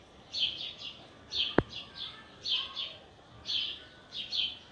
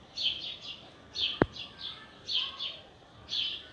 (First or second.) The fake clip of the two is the second